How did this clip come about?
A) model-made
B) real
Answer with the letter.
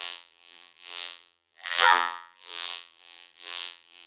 A